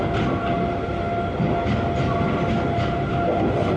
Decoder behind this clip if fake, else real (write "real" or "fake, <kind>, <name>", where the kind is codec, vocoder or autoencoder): real